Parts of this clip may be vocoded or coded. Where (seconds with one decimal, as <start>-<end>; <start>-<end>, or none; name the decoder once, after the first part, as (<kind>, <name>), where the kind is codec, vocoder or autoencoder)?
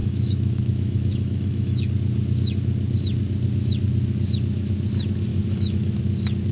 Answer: 0.0-1.9 (autoencoder, DAC-VAE); 5.3-6.0